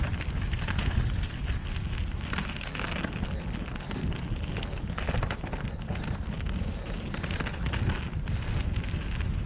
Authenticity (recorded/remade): recorded